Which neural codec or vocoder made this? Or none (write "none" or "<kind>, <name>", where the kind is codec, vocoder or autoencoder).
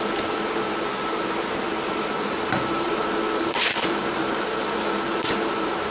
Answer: vocoder, BigVGAN v2